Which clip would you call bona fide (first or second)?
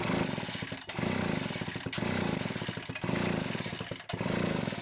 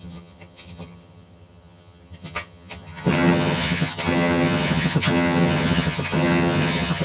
first